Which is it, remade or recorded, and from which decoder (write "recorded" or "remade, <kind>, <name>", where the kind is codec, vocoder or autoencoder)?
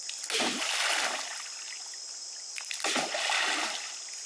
recorded